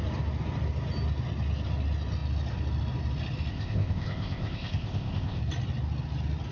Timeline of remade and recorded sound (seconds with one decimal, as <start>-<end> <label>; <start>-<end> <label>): 0.0-3.5 recorded; 3.5-5.4 remade; 5.4-6.5 recorded